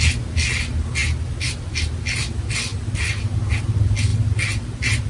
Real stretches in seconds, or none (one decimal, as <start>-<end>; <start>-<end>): 0.0-5.1